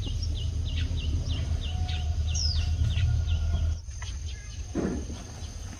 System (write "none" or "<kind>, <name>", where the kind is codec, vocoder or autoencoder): vocoder, BigVGAN v2